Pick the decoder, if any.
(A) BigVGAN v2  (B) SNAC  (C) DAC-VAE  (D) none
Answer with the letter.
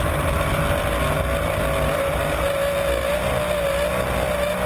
D